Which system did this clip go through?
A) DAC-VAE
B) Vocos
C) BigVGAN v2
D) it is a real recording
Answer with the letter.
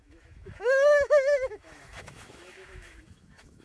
A